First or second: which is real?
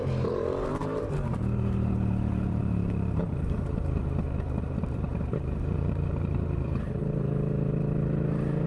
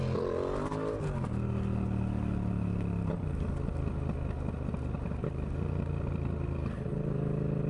second